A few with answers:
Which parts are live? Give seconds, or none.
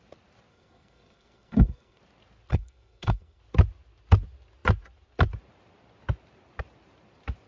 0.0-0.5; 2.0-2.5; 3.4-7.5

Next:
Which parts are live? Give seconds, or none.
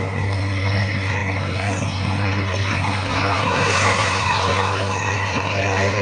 none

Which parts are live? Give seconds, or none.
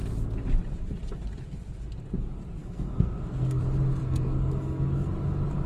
0.0-2.6; 3.6-4.0; 5.1-5.7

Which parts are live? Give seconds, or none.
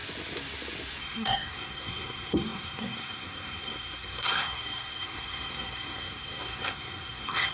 0.0-1.0